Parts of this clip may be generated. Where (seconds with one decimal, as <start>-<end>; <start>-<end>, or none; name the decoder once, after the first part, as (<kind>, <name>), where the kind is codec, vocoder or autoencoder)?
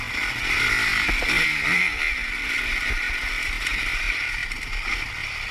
none